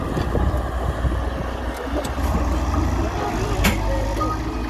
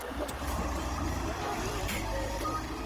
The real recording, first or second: first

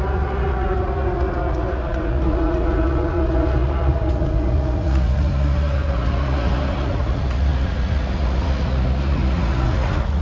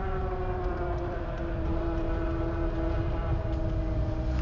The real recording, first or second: second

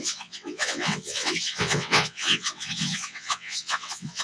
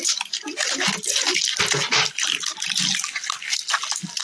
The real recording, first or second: second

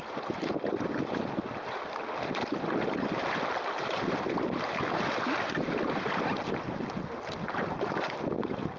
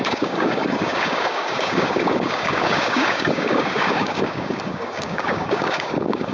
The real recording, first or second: first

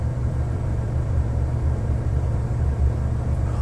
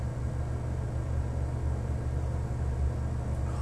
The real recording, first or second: second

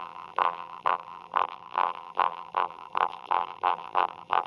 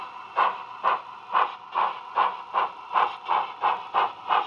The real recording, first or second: second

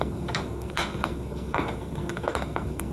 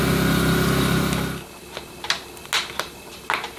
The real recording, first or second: second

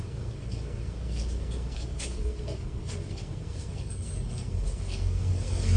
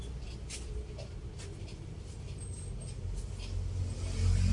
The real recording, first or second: second